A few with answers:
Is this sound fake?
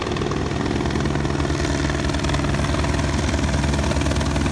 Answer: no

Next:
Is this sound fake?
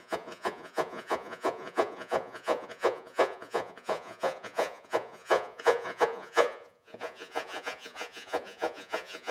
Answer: yes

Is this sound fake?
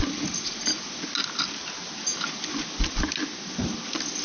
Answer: no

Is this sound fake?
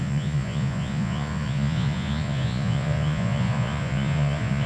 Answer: yes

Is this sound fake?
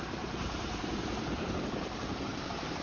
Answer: no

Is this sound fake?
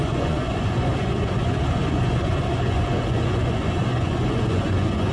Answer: yes